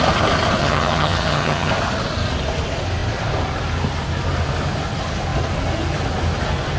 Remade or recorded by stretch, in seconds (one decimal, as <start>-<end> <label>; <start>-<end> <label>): 0.0-0.6 recorded; 0.6-1.7 remade; 1.7-6.8 recorded